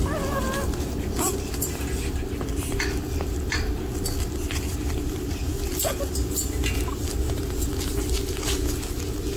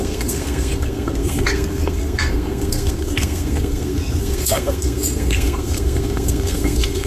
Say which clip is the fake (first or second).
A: second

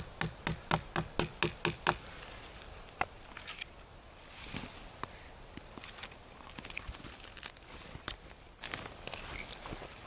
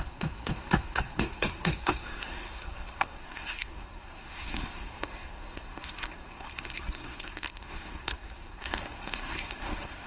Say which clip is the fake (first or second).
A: second